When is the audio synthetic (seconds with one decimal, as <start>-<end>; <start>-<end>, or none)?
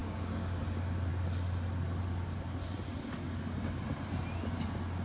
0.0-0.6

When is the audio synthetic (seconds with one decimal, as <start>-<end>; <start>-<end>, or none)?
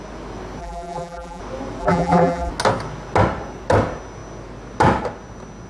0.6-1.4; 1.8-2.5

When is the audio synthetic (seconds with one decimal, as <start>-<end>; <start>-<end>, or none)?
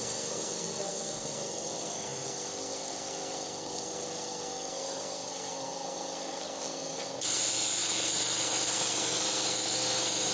0.0-10.3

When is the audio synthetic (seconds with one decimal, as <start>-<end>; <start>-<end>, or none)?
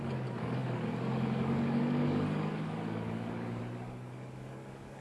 0.0-5.0